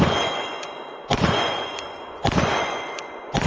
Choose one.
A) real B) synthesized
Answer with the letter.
B